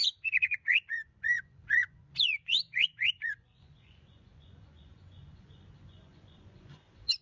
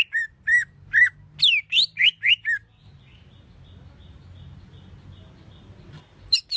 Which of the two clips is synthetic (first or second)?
first